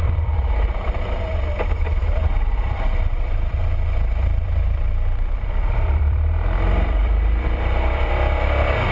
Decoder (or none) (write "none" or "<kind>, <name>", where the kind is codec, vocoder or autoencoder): vocoder, BigVGAN v2